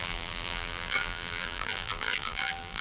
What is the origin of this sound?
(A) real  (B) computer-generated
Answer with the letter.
B